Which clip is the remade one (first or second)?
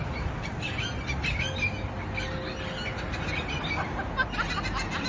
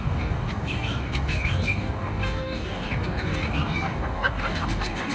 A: second